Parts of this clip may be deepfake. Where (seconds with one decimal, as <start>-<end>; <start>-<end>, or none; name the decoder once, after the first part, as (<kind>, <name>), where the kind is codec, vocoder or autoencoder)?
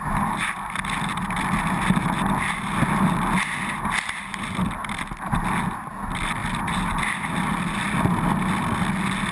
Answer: none